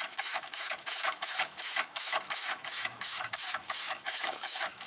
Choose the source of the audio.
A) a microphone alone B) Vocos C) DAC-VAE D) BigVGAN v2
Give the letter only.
C